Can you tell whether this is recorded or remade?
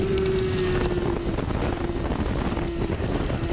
recorded